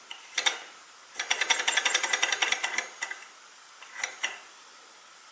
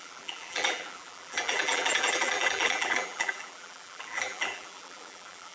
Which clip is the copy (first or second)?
second